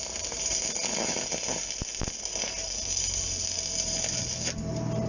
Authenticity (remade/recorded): recorded